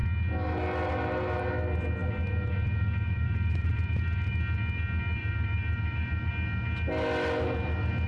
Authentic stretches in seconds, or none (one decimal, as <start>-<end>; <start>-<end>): 0.0-2.0; 4.3-5.2; 6.3-8.1

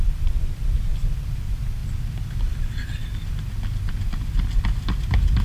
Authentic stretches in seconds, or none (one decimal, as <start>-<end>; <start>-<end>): 0.0-5.4

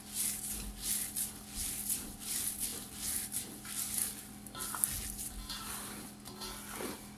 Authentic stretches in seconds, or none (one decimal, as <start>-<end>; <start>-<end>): 0.0-7.2

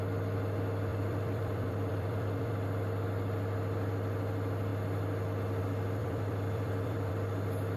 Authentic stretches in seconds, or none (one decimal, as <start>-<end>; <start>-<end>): 0.0-0.9; 2.5-6.0; 7.1-7.8

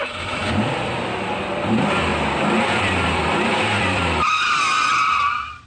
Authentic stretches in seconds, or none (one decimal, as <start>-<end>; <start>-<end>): none

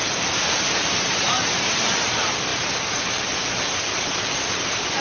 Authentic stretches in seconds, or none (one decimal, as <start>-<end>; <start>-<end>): none